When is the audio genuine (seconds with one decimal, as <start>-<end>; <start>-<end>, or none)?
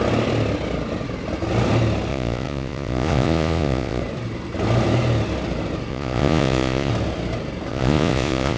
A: 0.0-2.1; 4.0-5.9; 6.9-7.7